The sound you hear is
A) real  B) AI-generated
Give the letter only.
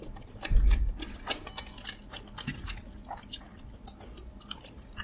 A